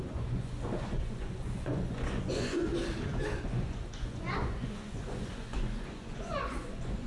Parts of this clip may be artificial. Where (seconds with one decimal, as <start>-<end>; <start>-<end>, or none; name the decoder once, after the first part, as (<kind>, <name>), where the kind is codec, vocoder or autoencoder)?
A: 0.0-2.7 (vocoder, Vocos); 3.4-7.1